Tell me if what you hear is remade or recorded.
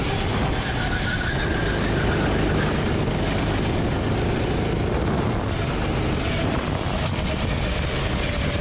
recorded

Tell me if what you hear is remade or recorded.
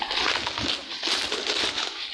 recorded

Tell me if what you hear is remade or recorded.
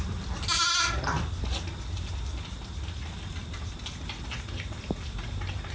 recorded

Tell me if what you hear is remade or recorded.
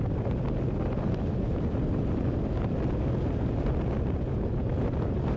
recorded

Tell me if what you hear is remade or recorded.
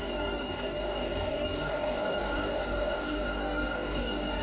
remade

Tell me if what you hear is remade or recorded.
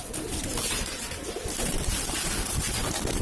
recorded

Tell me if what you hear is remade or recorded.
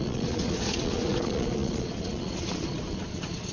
remade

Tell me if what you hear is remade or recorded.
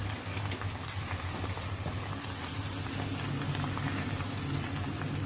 recorded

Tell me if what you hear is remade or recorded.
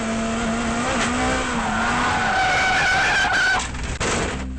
recorded